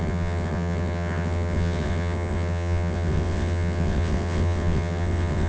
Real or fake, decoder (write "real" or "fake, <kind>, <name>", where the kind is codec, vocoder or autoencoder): fake, vocoder, WaveNeXt